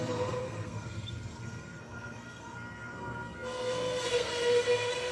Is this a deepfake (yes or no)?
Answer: yes